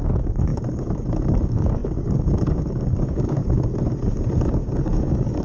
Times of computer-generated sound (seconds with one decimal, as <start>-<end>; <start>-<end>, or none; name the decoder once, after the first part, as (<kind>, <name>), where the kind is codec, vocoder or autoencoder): 0.0-3.4 (codec, DAC); 4.6-5.4

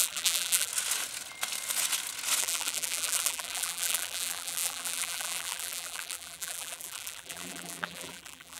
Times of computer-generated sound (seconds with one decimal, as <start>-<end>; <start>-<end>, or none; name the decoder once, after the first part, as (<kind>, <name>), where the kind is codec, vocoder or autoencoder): 0.0-0.7 (vocoder, BigVGAN v2); 2.4-8.6